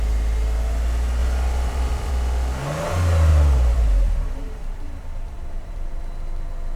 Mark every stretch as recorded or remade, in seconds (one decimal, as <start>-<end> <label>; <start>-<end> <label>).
0.0-1.2 recorded; 1.2-2.1 remade; 2.1-3.3 recorded; 3.3-6.0 remade; 6.0-6.8 recorded